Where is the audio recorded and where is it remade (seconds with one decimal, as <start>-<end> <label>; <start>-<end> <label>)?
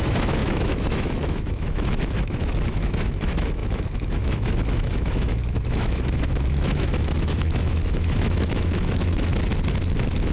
0.0-9.3 remade; 9.3-10.3 recorded